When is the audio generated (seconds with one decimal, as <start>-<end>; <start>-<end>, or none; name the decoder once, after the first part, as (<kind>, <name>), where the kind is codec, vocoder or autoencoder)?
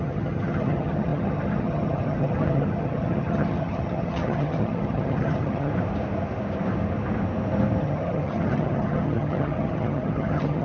0.0-5.7 (vocoder, HiFi-GAN); 7.8-10.6